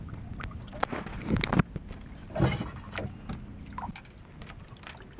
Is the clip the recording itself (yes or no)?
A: yes